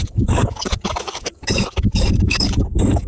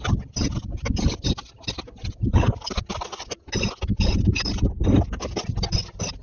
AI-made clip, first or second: first